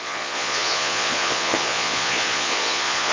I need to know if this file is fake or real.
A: fake